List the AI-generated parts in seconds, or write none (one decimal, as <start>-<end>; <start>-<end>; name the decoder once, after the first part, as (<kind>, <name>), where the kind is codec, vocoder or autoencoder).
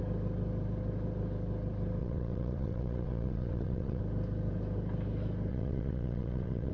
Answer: 2.0-4.0 (vocoder, WaveNeXt); 5.5-6.7